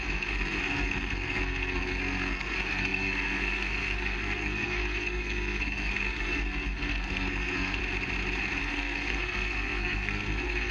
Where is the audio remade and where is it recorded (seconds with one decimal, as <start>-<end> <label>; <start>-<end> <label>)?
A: 0.0-7.8 remade; 7.8-8.6 recorded; 8.6-10.7 remade